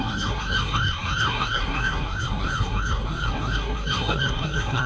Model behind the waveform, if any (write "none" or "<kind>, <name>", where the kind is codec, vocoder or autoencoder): codec, SNAC